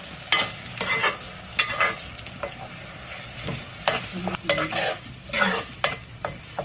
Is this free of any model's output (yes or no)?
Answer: yes